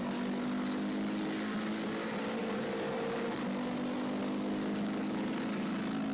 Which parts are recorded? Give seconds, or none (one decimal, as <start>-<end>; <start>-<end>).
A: 0.0-2.4; 2.9-4.2; 5.4-6.1